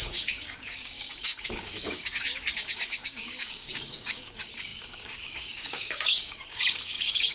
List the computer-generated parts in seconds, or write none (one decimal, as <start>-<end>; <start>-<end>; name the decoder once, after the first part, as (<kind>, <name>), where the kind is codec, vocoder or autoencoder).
0.0-7.3 (codec, DAC)